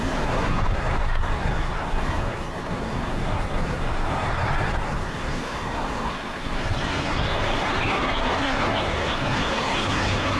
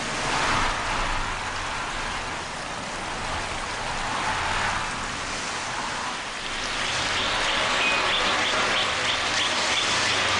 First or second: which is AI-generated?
first